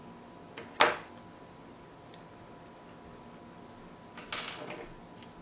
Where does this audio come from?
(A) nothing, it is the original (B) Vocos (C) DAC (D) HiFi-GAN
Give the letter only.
A